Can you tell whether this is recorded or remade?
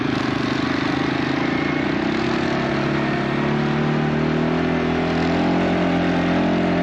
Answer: recorded